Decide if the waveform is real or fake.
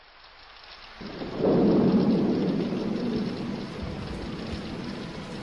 real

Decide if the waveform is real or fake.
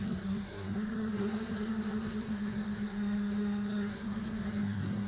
fake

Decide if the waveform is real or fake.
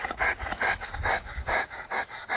real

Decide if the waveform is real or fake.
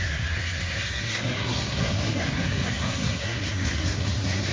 fake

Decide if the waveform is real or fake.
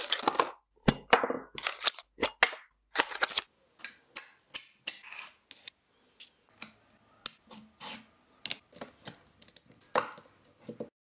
real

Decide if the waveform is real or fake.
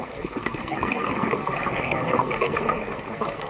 fake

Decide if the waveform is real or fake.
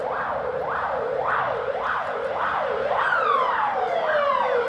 real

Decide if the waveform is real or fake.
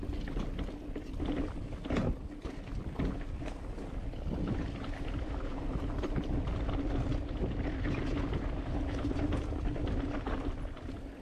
real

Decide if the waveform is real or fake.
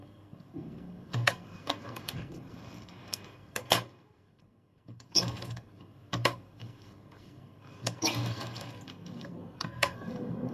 fake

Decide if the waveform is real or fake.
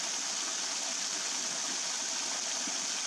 real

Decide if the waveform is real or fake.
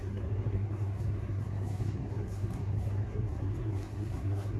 fake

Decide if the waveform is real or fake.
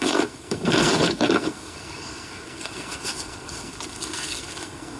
fake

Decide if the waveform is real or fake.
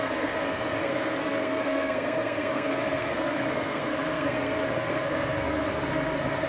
fake